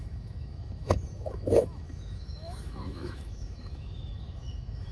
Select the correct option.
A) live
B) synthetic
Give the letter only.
B